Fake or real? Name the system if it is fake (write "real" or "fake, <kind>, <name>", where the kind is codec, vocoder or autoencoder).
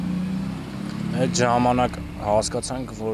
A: real